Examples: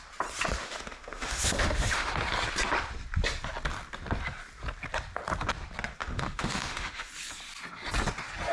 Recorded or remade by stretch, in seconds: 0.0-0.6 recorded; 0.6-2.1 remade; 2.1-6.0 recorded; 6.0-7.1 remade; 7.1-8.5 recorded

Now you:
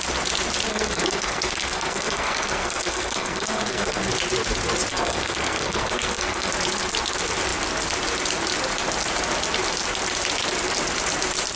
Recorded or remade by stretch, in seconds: 0.0-0.7 recorded; 0.7-4.1 remade; 4.1-4.9 recorded; 4.9-6.5 remade; 6.5-11.6 recorded

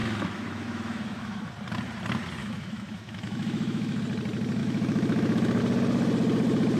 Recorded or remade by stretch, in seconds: 0.0-1.5 remade; 1.5-2.4 recorded; 2.4-4.0 remade; 4.0-4.6 recorded; 4.6-5.6 remade; 5.6-6.8 recorded

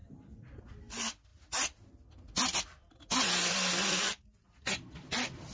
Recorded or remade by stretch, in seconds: 0.0-5.5 recorded

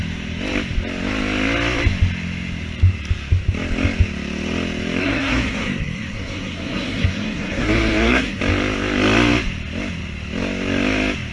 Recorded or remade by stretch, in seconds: 0.0-5.0 recorded; 5.0-8.4 remade; 8.4-11.3 recorded

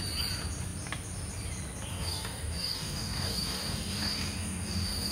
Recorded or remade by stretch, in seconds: 0.0-1.9 recorded; 1.9-5.1 remade

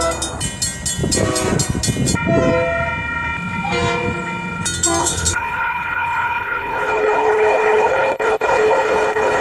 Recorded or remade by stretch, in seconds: 0.0-5.0 recorded; 5.0-9.4 remade